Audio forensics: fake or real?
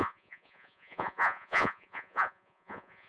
fake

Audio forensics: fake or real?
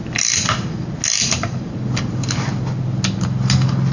real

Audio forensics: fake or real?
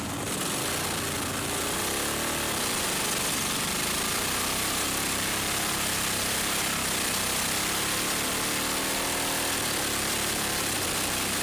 real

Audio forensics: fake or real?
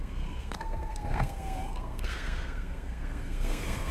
fake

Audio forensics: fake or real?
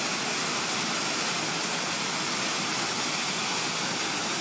real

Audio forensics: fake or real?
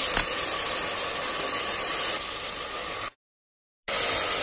real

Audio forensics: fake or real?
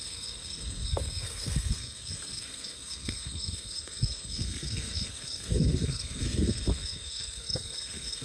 fake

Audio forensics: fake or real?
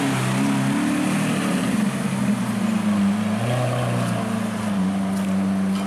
real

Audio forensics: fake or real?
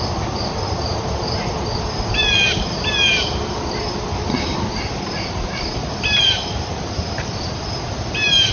real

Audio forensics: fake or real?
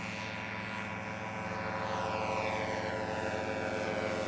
real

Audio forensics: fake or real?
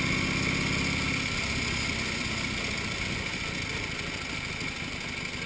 real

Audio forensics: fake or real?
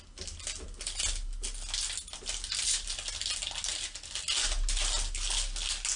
real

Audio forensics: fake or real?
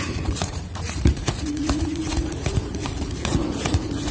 fake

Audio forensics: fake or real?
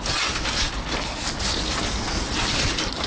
real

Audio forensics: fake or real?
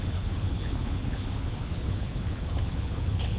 fake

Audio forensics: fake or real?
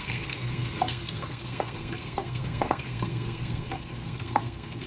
fake